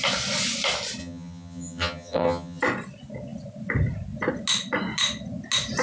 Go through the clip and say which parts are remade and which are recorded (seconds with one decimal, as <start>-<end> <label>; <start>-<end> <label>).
0.0-1.0 recorded; 1.0-2.6 remade; 2.6-5.8 recorded